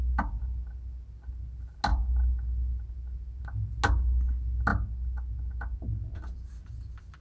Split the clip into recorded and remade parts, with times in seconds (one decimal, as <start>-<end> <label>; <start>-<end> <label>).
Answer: 0.0-7.2 recorded